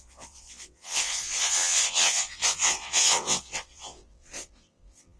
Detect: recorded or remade remade